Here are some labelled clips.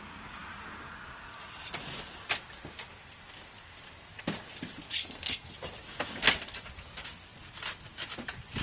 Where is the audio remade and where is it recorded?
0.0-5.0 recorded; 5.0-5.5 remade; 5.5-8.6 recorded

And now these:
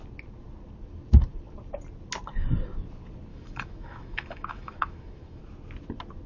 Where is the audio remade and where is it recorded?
0.0-3.3 recorded; 3.3-5.4 remade; 5.4-6.3 recorded

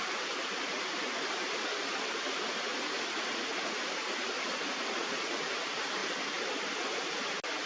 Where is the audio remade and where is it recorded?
0.0-2.7 recorded; 2.7-3.8 remade; 3.8-4.5 recorded; 4.5-5.3 remade; 5.3-7.7 recorded

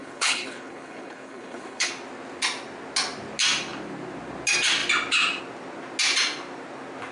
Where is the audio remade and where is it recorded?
0.0-1.9 remade; 1.9-7.1 recorded

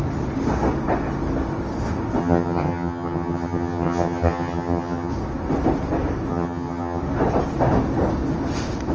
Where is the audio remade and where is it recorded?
0.0-2.2 recorded; 2.2-5.1 remade; 5.1-6.3 recorded; 6.3-7.0 remade; 7.0-8.9 recorded